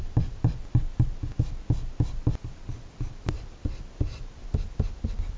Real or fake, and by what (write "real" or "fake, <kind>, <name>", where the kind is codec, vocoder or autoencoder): real